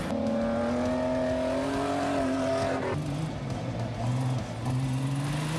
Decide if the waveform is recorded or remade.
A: recorded